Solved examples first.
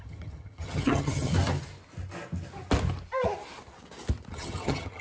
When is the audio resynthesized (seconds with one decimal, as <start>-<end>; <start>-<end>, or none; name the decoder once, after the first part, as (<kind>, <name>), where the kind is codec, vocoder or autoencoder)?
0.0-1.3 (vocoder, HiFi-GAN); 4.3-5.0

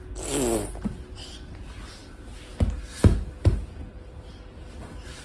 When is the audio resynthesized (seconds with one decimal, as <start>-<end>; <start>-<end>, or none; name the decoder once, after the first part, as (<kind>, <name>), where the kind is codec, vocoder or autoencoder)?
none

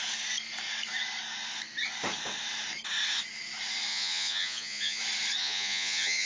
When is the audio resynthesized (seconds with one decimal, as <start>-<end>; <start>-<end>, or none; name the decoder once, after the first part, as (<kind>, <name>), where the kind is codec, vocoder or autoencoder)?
3.9-5.0 (vocoder, Vocos); 5.4-6.3